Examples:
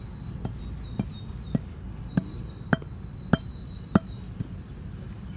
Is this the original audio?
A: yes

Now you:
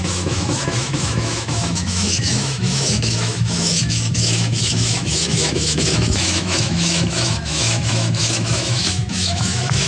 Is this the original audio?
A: no